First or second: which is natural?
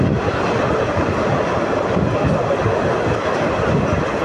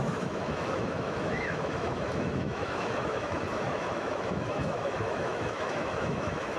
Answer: first